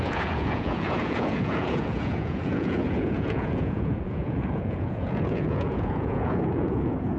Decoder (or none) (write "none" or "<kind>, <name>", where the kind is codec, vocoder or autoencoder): vocoder, Vocos